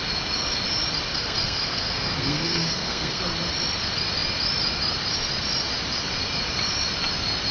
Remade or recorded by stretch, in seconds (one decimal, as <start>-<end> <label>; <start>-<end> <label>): 0.0-1.1 recorded; 1.1-3.2 remade; 3.2-7.5 recorded

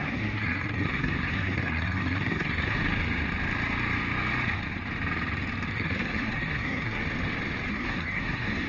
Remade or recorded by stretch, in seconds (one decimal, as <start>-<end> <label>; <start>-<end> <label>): 0.0-2.8 remade; 2.8-5.7 recorded; 5.7-7.0 remade; 7.0-7.7 recorded; 7.7-8.7 remade

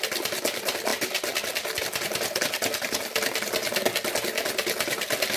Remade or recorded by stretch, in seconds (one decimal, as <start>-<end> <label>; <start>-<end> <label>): 0.0-5.4 recorded

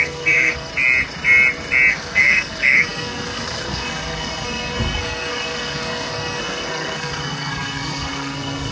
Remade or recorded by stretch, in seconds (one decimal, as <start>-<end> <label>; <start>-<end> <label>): 0.0-0.7 remade; 0.7-1.9 recorded; 1.9-8.7 remade

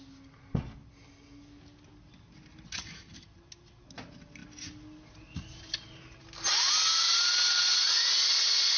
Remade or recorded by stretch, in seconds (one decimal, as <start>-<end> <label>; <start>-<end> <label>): 0.0-8.8 recorded

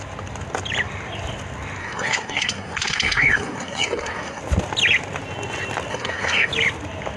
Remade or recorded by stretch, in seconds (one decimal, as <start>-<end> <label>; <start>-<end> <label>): 0.0-1.8 recorded; 1.8-4.4 remade; 4.4-5.9 recorded; 5.9-6.5 remade; 6.5-7.2 recorded

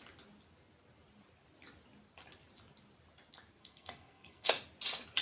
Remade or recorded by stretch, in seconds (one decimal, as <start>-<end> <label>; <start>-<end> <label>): 0.0-3.6 recorded; 3.6-4.5 remade; 4.5-5.2 recorded

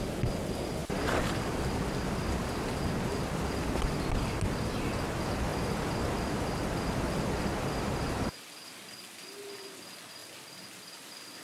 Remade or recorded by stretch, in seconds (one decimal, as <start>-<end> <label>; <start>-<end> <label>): 0.0-11.4 recorded